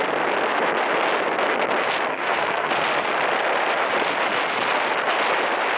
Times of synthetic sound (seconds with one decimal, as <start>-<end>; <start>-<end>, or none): 2.1-2.7